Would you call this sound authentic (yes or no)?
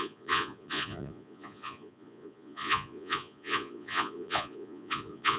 no